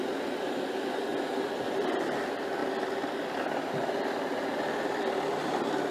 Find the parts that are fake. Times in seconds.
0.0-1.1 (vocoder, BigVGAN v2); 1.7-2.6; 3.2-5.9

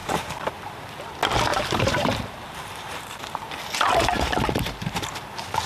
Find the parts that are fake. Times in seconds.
0.0-0.5 (vocoder, BigVGAN v2); 1.5-3.2

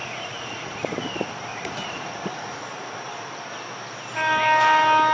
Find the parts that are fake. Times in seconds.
0.0-1.0 (vocoder, Vocos); 1.5-3.0